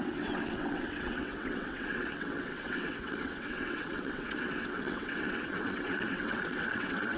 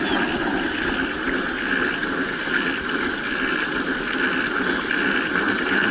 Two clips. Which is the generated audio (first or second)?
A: first